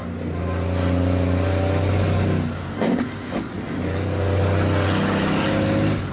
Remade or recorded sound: recorded